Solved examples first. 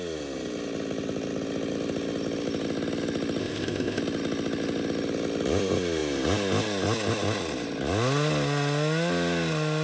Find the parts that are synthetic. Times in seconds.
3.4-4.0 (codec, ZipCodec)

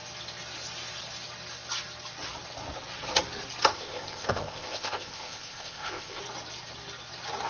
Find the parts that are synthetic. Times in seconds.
3.7-6.2 (codec, ZipCodec)

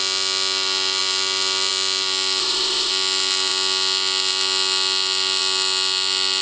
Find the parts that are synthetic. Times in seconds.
2.4-2.9 (codec, ZipCodec)

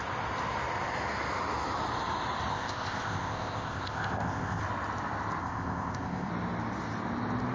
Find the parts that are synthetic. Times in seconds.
2.5-4.6 (codec, ZipCodec); 5.4-6.3

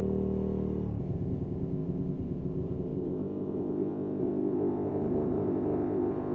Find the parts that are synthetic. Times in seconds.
1.0-6.3 (codec, ZipCodec)

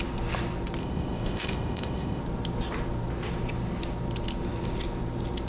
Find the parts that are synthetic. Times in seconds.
0.8-2.2 (codec, ZipCodec)